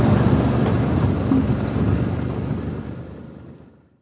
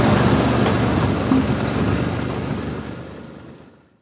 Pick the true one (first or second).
second